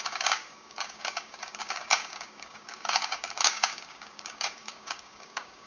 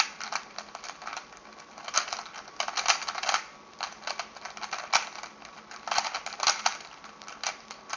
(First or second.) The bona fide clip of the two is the second